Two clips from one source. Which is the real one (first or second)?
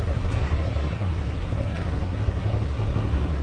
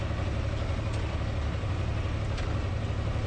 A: second